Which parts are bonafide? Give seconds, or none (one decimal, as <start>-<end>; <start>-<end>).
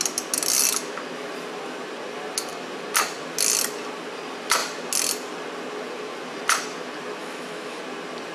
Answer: 0.0-7.2; 7.8-8.3